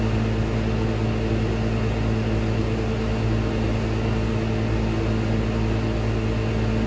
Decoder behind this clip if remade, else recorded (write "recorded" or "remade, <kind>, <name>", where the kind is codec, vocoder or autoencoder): recorded